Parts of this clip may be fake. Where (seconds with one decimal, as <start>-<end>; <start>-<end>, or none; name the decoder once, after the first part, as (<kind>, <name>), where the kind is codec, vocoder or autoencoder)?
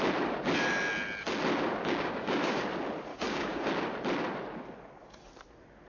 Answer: 1.8-2.6 (codec, DAC); 3.1-3.7